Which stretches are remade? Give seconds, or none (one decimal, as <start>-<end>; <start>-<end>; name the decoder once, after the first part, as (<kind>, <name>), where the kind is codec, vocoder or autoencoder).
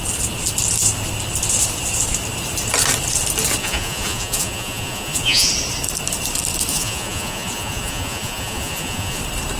3.6-5.5 (vocoder, Vocos); 6.7-9.2